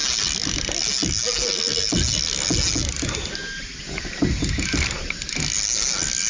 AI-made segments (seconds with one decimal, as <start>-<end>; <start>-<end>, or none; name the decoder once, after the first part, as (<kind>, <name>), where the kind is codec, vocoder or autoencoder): none